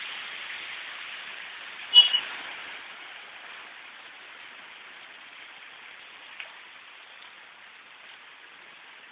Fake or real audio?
real